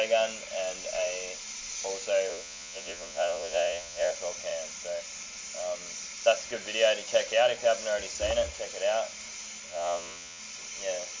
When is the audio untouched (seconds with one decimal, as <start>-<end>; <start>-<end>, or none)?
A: 0.0-2.3; 4.1-9.7; 10.4-11.2